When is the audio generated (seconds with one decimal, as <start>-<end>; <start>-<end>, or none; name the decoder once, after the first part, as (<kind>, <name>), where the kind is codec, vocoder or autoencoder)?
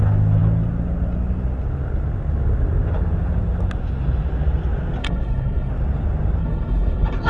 5.0-5.7 (codec, HILCodec); 6.4-7.3